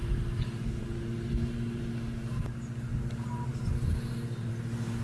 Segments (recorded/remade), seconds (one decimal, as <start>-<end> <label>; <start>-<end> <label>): 0.0-5.0 recorded

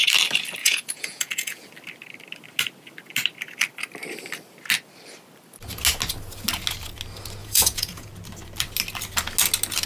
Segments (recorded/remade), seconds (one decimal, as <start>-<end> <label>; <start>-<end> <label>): 0.0-0.6 recorded; 0.6-1.7 remade; 1.7-7.4 recorded; 7.4-8.1 remade; 8.1-9.9 recorded

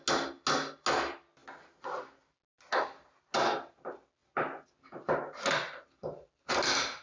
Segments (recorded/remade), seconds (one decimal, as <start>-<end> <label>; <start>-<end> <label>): 0.0-7.0 recorded

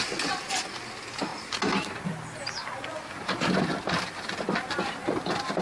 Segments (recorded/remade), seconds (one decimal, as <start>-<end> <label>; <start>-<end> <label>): 0.0-5.6 recorded

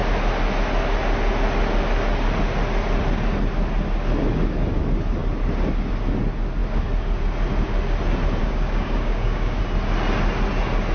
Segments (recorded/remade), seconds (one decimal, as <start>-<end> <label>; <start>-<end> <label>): 0.0-8.4 recorded; 8.4-9.6 remade; 9.6-10.9 recorded

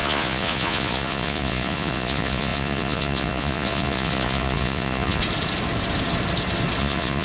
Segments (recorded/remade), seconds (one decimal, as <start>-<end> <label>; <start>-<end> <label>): 0.0-5.2 remade; 5.2-6.8 recorded; 6.8-7.2 remade

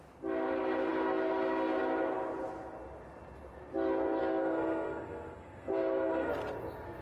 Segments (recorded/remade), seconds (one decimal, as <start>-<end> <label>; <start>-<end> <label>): 0.0-4.2 recorded; 4.2-6.3 remade; 6.3-7.0 recorded

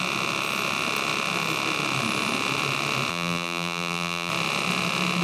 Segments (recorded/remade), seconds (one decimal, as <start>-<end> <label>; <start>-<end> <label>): 0.0-3.1 recorded; 3.1-4.3 remade; 4.3-5.2 recorded